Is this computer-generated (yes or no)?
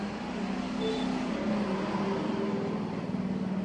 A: no